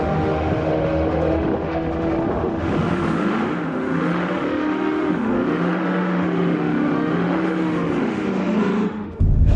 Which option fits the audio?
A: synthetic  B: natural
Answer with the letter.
A